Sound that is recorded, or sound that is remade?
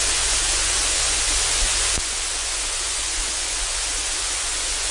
remade